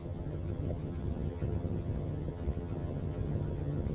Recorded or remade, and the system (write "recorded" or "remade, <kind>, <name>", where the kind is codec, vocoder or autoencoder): remade, vocoder, HiFi-GAN